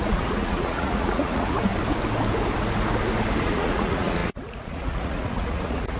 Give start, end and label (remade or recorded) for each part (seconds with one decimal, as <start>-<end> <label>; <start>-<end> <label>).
0.0-1.7 remade; 1.7-3.4 recorded; 3.4-6.0 remade